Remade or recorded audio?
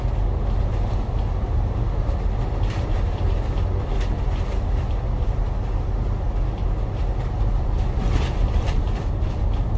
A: recorded